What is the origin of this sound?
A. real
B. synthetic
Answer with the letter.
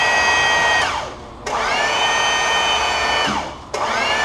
A